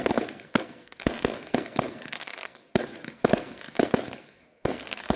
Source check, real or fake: fake